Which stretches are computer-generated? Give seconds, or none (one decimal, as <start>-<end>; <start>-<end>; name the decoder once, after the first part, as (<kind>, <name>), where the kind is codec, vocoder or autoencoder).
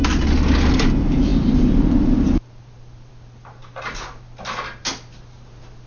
none